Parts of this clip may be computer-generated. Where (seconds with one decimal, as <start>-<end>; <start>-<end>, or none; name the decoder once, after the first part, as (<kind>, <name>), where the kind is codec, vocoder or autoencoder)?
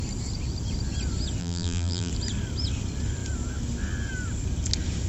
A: 1.4-2.1 (vocoder, BigVGAN v2)